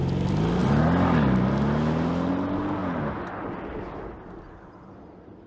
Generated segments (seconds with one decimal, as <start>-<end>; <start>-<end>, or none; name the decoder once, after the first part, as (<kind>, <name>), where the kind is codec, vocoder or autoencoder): none

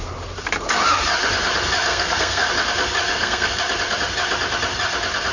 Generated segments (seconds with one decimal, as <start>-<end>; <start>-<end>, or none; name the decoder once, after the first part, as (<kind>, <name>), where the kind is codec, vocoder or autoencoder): 1.9-2.5 (codec, SNAC); 3.1-3.6

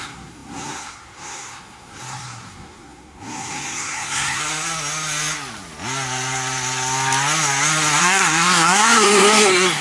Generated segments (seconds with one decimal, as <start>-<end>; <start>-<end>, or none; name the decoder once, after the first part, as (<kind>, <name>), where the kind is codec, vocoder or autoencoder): 0.0-4.4 (codec, SNAC); 8.0-9.8

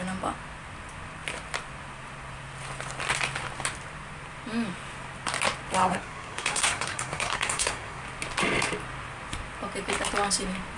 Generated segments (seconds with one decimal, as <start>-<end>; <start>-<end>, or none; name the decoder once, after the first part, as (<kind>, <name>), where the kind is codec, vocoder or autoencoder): 5.8-8.0 (codec, SNAC)

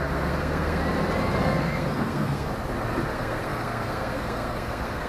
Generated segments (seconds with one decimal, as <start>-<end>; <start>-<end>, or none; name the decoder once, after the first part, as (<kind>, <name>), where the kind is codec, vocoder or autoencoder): 0.0-0.8 (codec, SNAC); 1.4-2.5; 3.1-5.1

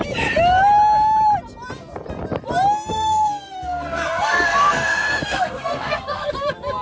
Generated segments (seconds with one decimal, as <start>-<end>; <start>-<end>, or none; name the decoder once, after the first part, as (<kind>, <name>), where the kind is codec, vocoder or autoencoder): 2.9-6.3 (codec, SNAC)

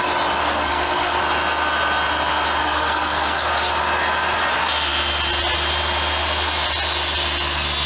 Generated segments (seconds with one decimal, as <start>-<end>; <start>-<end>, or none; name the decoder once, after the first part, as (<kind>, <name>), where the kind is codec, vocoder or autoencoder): 0.4-1.2 (codec, SNAC); 2.6-3.7

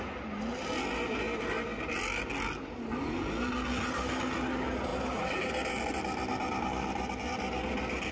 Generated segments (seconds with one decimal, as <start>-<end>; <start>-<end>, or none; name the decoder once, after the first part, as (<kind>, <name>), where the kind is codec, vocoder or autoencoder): none